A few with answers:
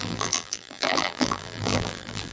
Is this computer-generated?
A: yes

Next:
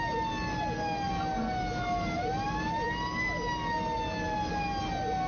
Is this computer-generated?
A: no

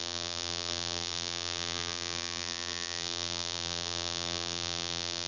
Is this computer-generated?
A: yes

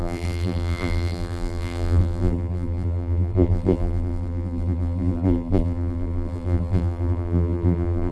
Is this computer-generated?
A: yes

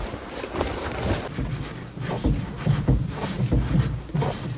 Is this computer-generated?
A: no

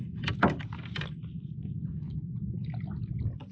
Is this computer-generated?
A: no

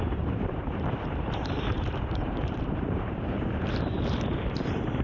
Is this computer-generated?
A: yes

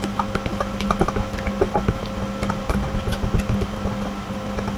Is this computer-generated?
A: no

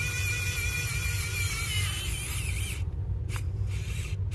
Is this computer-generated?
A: yes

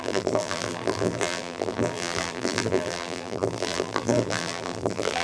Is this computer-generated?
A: yes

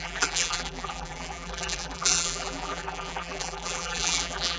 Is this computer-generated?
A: yes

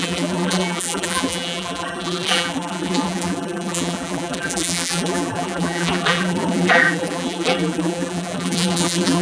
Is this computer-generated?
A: yes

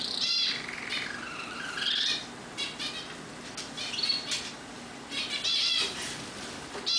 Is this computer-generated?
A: yes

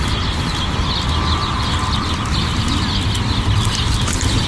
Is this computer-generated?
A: no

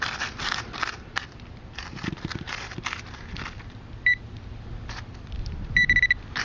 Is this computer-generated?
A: yes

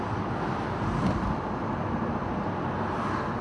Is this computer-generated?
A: no